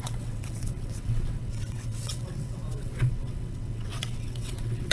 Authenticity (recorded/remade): remade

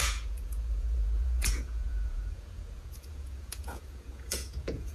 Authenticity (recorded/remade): remade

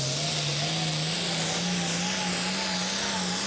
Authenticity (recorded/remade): recorded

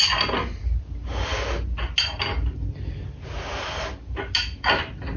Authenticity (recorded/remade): recorded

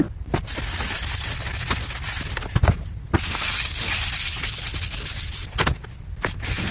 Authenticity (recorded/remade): recorded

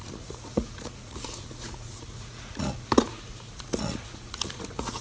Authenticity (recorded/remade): remade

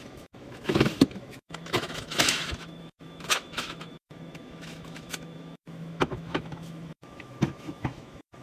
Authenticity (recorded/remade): remade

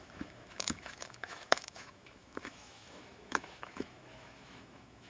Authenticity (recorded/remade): remade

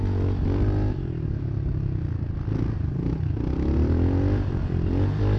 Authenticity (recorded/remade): recorded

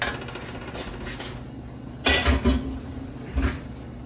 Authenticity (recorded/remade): recorded